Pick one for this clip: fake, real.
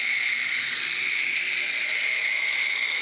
real